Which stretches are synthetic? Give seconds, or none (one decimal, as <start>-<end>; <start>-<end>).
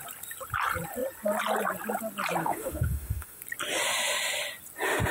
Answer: 2.4-3.4